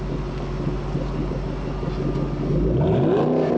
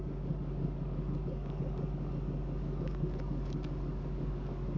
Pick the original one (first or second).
first